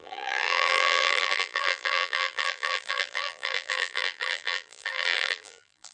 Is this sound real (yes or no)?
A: no